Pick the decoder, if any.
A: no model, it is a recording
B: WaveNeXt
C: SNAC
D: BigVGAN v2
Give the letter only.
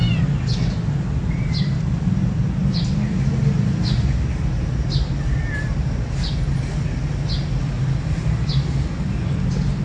A